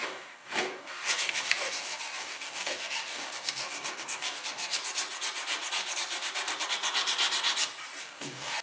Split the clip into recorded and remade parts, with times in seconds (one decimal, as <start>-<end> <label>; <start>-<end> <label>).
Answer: 0.0-4.8 remade; 4.8-8.0 recorded; 8.0-8.6 remade